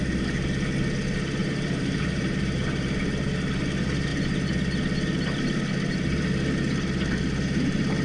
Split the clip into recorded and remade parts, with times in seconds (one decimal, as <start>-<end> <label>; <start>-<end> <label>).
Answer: 0.0-1.4 recorded; 1.4-3.0 remade; 3.0-8.0 recorded